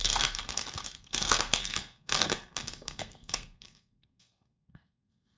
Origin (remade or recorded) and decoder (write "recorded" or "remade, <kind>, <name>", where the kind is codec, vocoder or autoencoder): remade, codec, SNAC